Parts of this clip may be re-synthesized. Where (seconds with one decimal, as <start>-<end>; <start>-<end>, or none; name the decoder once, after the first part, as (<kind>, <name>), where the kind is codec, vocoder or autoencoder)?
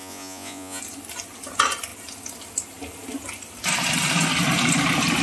0.0-0.8 (vocoder, Vocos)